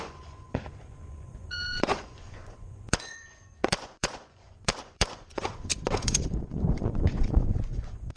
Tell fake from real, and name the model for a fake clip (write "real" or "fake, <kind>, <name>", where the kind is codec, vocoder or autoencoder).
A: fake, vocoder, Vocos